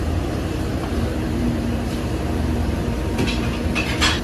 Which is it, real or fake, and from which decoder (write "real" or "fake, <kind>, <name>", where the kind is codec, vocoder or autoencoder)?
fake, vocoder, BigVGAN v2